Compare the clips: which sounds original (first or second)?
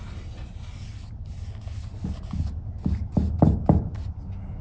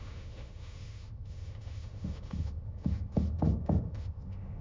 first